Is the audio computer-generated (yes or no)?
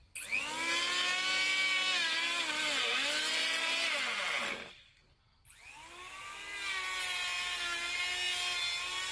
no